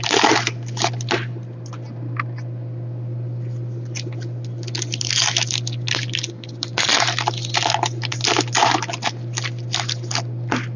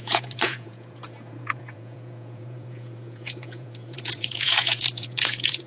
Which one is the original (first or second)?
first